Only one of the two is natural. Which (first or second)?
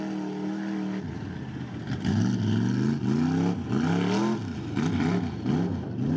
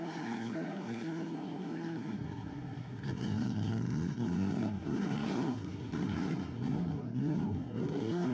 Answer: first